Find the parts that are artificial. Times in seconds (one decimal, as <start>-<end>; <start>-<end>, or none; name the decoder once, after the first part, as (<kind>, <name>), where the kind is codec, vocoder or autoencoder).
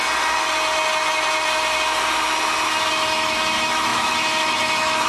2.9-5.1 (autoencoder, DAC-VAE)